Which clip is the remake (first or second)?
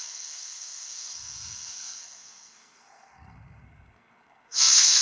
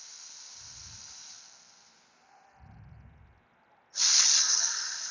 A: first